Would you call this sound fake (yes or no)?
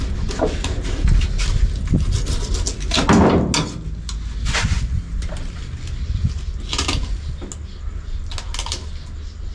no